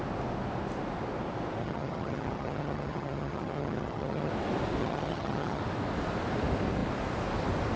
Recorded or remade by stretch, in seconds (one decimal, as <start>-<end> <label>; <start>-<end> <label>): 0.0-1.6 recorded; 1.6-4.3 remade; 4.3-4.8 recorded; 4.8-5.6 remade; 5.6-7.8 recorded